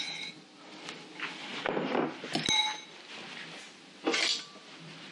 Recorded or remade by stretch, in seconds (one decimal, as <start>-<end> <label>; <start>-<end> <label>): 0.0-5.1 recorded